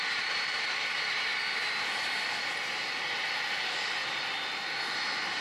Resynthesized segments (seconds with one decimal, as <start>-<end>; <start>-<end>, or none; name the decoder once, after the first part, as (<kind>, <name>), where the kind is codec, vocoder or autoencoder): none